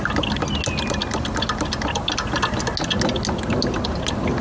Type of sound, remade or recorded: recorded